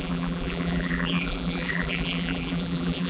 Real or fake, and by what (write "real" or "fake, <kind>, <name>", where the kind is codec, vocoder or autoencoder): fake, vocoder, BigVGAN v2